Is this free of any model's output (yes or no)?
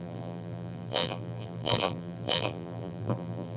no